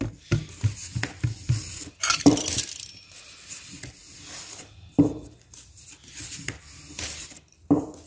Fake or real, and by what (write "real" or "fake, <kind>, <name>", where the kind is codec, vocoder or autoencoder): real